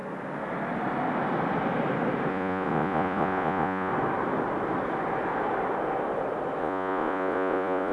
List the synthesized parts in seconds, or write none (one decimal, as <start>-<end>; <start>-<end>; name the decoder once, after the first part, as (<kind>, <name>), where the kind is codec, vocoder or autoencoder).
2.3-3.9 (vocoder, Vocos); 6.6-7.9